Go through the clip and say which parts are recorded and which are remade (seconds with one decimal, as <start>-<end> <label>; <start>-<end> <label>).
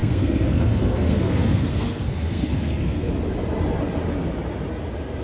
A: 0.0-3.1 remade; 3.1-5.2 recorded